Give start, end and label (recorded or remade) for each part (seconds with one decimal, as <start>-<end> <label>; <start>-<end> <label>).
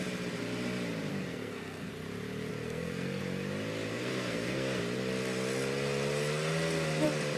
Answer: 0.0-1.1 recorded; 1.1-1.9 remade; 1.9-2.5 recorded; 2.5-3.2 remade; 3.2-3.9 recorded; 3.9-4.8 remade; 4.8-7.4 recorded